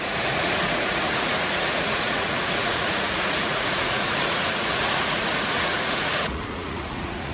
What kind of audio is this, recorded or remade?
remade